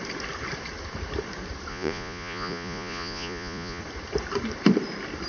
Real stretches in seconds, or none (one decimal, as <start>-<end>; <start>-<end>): 0.0-1.7; 3.8-5.3